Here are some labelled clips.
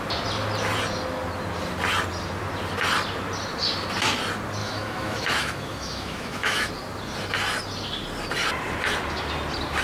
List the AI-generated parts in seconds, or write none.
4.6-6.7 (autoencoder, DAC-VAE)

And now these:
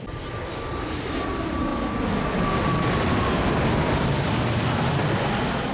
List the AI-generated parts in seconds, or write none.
none

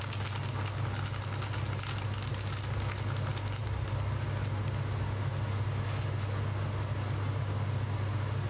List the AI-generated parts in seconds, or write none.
none

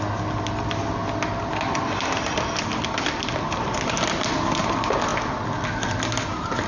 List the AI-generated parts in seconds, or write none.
none

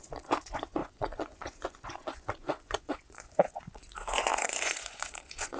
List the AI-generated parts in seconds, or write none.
0.0-5.6 (vocoder, Vocos)

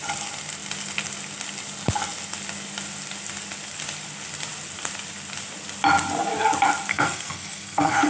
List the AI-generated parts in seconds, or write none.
6.9-8.1 (codec, SNAC)